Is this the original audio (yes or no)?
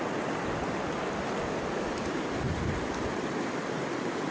yes